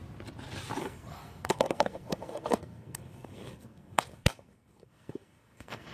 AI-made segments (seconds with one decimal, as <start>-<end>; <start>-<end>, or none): 0.8-5.9